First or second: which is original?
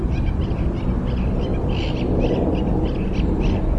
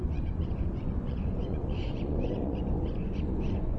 first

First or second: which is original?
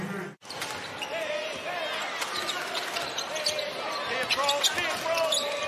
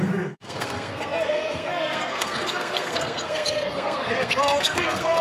first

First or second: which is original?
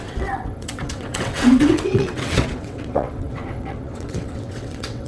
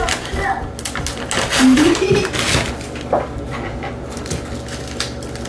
second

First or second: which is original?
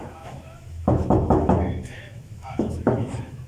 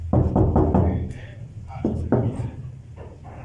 second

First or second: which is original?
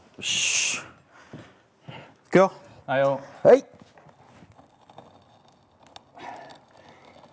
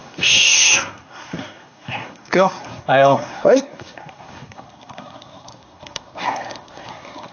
first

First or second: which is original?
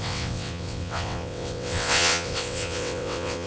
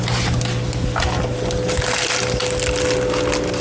second